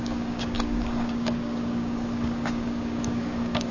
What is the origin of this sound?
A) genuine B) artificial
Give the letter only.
B